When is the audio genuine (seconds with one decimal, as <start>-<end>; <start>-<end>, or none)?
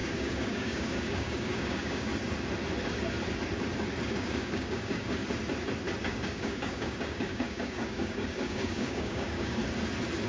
2.1-4.1; 5.2-6.0; 9.6-10.3